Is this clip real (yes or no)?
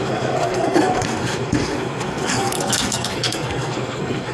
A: no